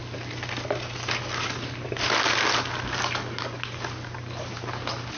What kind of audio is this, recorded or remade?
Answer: recorded